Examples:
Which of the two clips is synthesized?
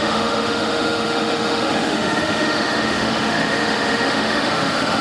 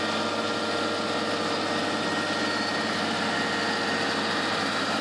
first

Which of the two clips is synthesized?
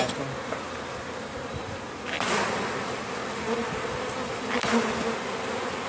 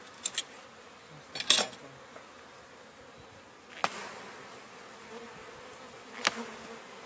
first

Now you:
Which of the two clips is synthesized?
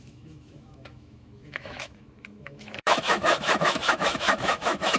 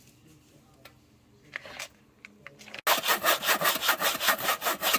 first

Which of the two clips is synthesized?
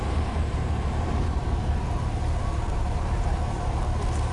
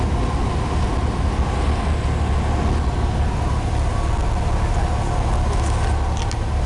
first